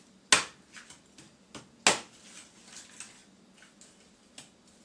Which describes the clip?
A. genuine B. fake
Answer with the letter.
A